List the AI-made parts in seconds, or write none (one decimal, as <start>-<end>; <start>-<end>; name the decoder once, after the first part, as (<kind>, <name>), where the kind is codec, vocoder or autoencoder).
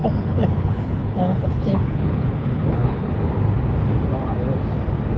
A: 0.0-3.1 (codec, HILCodec)